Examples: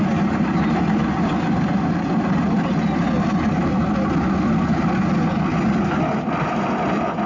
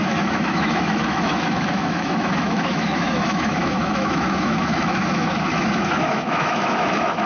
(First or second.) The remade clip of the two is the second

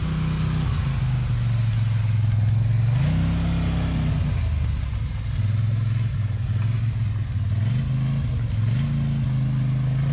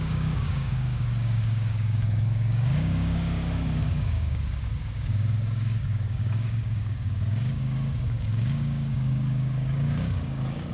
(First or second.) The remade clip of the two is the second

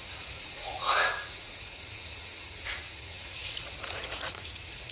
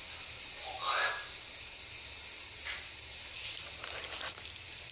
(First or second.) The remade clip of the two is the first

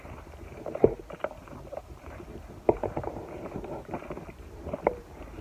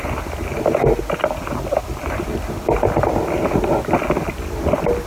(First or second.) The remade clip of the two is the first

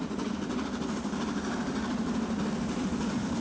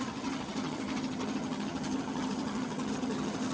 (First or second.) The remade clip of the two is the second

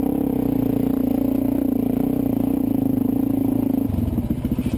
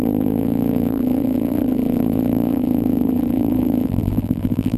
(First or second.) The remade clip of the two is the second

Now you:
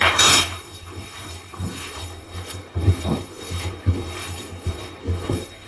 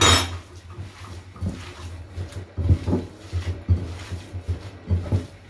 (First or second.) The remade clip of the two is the first